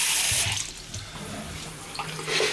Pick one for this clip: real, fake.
real